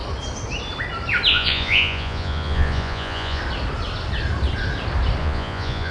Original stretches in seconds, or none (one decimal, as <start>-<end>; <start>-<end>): 0.0-1.3; 3.4-5.2